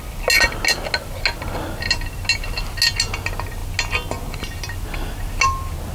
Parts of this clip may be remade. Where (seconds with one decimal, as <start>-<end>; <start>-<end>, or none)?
none